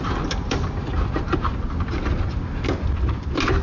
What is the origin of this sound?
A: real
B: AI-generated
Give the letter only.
A